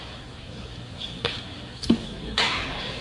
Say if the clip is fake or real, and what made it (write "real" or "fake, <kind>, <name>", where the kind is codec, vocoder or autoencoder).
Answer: fake, codec, SNAC